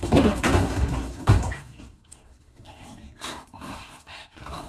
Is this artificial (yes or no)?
yes